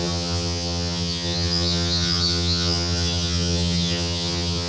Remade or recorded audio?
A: remade